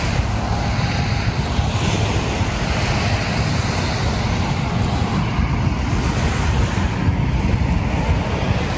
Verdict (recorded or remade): recorded